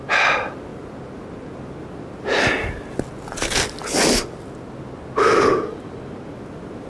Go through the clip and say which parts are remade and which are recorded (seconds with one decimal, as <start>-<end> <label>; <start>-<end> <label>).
0.0-6.9 recorded